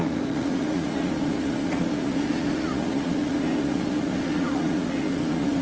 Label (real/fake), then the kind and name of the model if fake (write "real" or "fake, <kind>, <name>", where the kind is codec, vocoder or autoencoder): fake, vocoder, Vocos